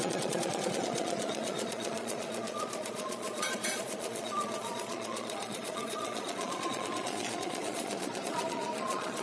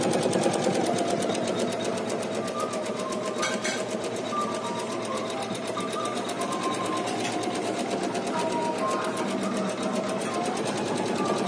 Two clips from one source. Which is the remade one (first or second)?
first